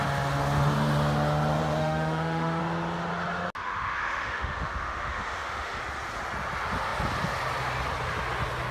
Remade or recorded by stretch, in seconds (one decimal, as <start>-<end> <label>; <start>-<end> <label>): 0.0-1.8 recorded; 1.8-2.6 remade; 2.6-3.6 recorded; 3.6-5.8 remade; 5.8-8.7 recorded